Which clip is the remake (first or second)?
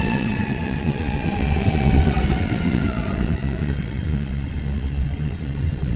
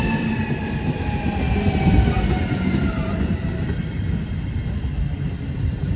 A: first